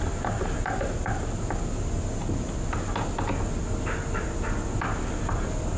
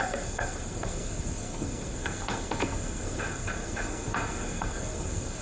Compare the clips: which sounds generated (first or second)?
second